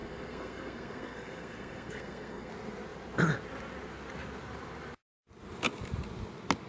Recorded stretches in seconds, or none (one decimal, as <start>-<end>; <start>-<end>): 2.5-6.7